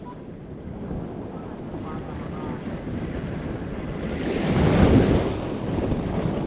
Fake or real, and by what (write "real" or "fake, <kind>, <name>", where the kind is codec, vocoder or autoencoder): real